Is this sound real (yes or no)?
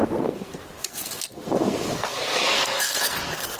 no